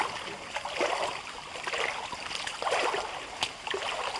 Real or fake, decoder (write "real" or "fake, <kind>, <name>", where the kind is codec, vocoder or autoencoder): real